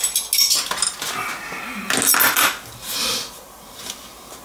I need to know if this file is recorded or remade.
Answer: recorded